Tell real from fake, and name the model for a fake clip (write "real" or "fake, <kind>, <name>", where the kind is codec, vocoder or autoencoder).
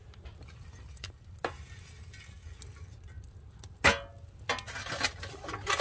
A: real